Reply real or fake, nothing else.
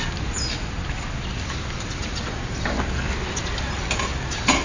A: real